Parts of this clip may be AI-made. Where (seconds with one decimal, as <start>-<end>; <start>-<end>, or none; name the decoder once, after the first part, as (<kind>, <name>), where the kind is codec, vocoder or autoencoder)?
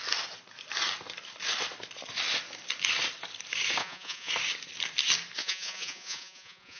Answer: 3.8-4.3 (vocoder, Vocos); 5.4-6.8